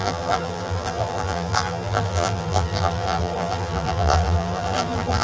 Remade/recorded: remade